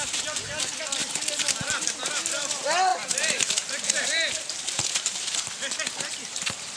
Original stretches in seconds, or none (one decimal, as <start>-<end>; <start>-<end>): 0.0-2.9; 5.2-6.8